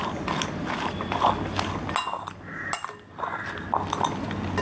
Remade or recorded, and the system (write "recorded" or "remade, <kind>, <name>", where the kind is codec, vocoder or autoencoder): recorded